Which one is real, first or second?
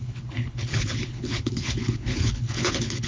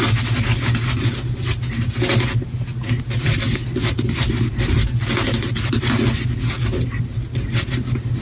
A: second